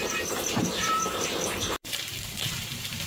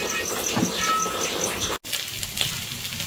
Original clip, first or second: second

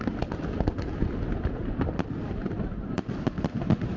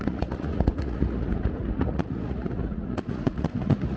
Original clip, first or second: first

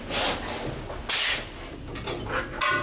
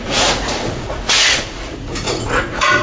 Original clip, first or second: first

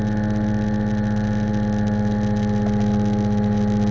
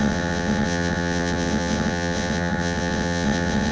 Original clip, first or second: first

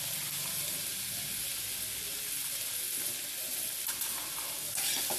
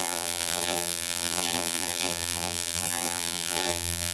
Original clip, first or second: first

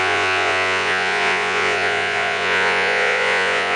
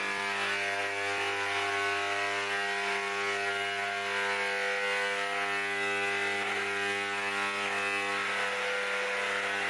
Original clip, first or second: second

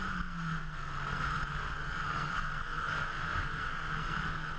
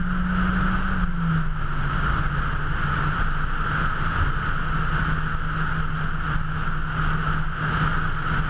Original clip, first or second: second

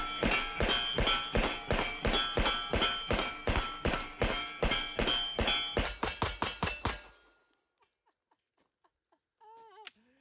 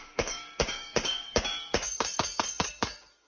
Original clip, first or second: first